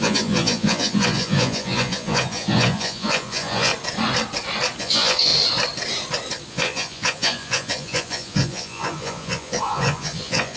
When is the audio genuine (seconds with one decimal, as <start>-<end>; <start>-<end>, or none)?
3.7-4.8; 5.3-6.5